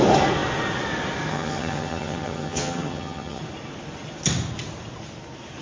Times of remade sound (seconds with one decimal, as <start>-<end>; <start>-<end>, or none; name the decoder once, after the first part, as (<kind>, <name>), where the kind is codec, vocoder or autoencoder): 1.3-3.4 (vocoder, HiFi-GAN)